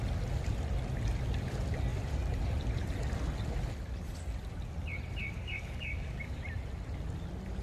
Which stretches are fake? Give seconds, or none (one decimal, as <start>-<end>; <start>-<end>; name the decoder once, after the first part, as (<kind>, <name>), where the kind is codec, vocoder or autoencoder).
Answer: 5.2-6.4 (codec, DAC)